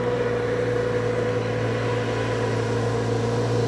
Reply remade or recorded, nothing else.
recorded